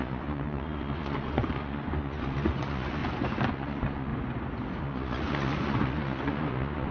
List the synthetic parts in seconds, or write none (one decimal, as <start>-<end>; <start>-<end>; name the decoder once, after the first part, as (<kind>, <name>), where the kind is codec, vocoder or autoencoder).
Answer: 0.0-3.0 (vocoder, Vocos); 3.5-4.1; 4.8-6.9